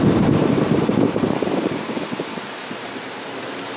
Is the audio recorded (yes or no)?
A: no